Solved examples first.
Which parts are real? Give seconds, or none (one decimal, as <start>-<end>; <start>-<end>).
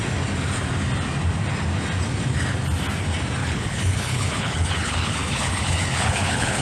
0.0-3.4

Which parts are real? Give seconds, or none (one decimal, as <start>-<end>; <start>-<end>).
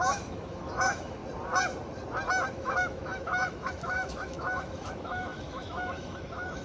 1.2-2.5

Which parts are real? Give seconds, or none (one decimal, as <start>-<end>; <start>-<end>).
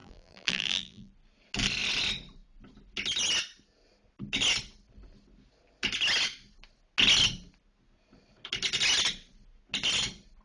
1.1-10.4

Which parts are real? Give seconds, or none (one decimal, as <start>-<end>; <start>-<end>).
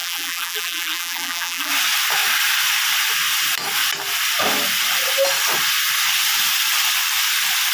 1.7-7.7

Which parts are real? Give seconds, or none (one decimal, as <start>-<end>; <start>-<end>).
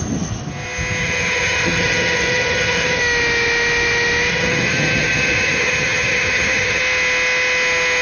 0.0-1.0; 3.0-4.3; 6.8-8.0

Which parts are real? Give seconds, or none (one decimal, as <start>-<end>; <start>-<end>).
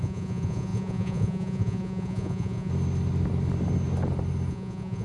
2.7-4.5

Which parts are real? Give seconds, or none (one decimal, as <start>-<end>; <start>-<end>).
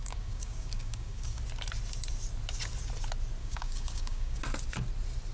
1.4-3.4; 4.4-5.3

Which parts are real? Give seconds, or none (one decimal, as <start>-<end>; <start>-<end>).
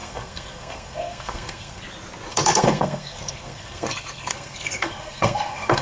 1.8-2.3